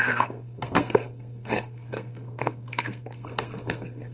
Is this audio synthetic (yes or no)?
yes